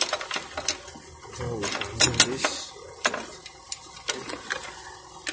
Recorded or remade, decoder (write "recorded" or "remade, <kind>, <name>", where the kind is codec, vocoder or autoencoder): recorded